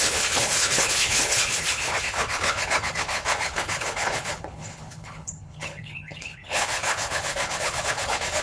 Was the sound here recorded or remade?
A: remade